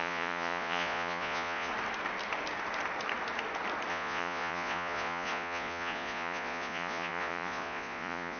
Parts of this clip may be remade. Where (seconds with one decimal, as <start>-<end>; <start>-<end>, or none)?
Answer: 0.0-1.7; 3.9-8.4

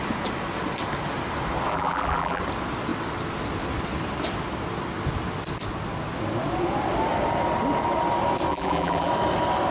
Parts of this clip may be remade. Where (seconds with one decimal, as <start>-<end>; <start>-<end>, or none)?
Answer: 1.7-2.4; 8.5-9.1

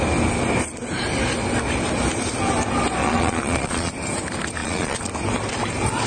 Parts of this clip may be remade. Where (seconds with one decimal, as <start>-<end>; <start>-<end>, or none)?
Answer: 3.0-3.9; 4.6-5.1

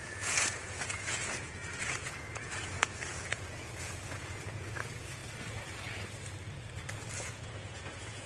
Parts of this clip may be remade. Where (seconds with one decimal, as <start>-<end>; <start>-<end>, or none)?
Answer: 0.0-5.2; 7.2-8.3

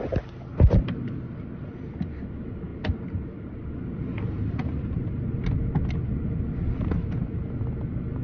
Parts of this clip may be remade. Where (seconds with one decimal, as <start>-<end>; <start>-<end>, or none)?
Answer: none